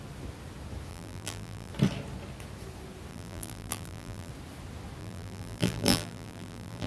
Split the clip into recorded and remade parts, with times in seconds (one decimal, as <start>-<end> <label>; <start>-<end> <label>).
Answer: 0.0-0.9 recorded; 0.9-1.7 remade; 1.7-3.1 recorded; 3.1-4.3 remade; 4.3-5.0 recorded; 5.0-6.9 remade